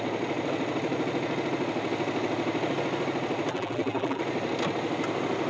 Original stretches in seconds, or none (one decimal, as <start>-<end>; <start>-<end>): 0.0-3.5; 4.2-5.5